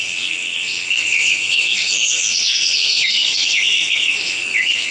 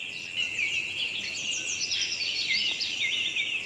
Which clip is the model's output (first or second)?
first